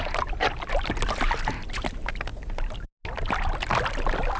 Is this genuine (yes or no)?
yes